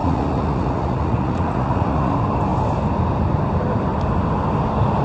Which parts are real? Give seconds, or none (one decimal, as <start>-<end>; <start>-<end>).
2.1-5.0